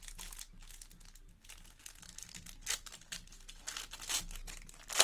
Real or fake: real